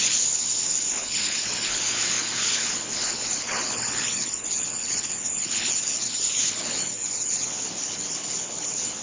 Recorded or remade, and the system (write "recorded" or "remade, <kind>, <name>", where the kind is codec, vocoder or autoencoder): remade, codec, HILCodec